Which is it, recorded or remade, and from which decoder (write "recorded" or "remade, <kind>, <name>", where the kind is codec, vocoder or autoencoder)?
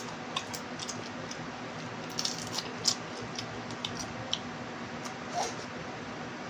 recorded